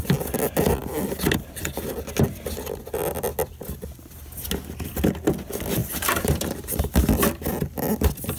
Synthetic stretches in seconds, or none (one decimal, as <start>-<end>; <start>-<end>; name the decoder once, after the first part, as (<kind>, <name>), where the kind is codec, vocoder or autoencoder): 5.8-6.8 (vocoder, BigVGAN v2)